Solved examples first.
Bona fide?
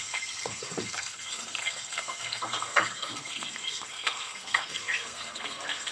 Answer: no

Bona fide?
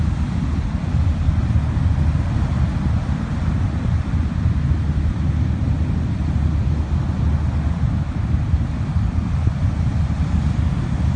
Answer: yes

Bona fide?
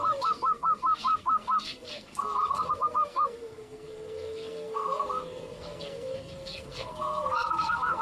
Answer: no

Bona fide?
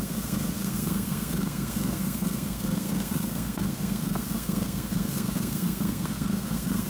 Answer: no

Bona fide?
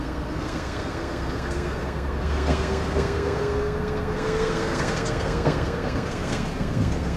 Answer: no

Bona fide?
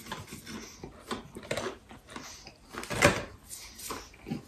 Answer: yes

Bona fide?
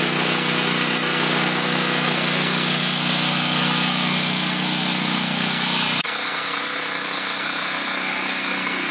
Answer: no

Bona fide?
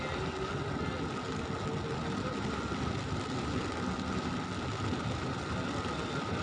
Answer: yes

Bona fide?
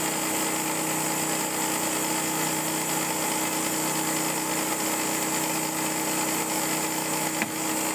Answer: yes